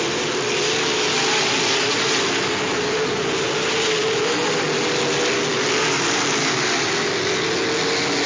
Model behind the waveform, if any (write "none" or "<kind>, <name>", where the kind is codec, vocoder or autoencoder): none